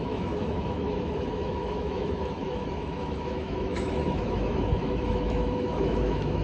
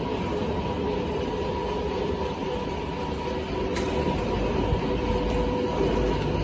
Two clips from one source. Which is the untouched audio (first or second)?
second